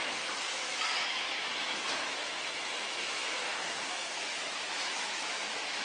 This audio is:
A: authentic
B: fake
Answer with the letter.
B